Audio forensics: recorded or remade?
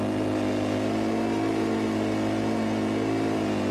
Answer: recorded